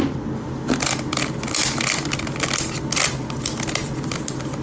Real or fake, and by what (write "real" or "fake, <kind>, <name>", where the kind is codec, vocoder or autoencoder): real